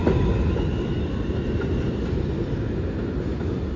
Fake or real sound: real